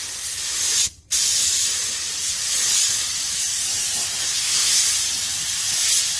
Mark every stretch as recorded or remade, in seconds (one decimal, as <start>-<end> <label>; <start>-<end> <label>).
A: 0.0-4.2 recorded; 4.2-4.8 remade; 4.8-6.2 recorded